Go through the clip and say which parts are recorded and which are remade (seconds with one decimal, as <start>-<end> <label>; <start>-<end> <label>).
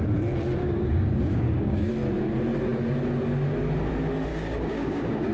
0.0-0.6 recorded; 0.6-1.9 remade; 1.9-4.3 recorded; 4.3-5.3 remade